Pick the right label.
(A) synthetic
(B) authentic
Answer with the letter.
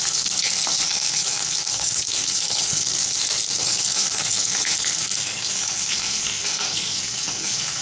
A